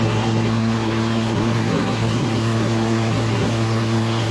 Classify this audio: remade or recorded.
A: remade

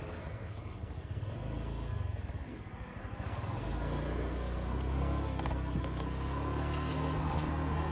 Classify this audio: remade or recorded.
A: remade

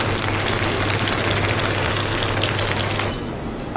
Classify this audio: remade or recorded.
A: recorded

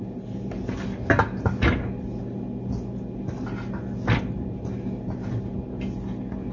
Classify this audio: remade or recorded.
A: recorded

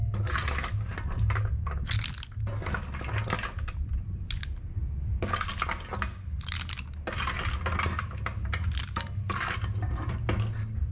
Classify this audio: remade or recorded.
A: recorded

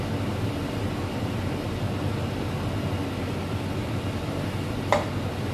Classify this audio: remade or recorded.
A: recorded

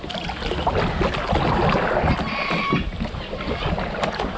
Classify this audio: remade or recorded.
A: recorded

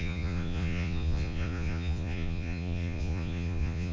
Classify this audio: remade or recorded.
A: remade